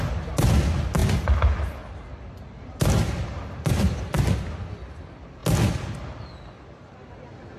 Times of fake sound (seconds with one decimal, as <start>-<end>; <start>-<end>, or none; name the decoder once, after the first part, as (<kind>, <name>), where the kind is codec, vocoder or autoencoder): none